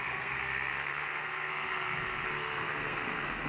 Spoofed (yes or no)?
yes